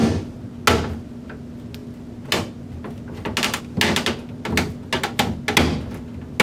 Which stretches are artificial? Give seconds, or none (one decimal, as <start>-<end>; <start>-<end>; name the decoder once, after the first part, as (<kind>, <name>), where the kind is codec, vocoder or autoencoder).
none